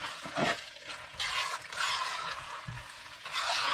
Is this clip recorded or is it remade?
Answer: remade